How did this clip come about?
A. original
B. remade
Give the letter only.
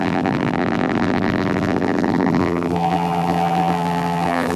B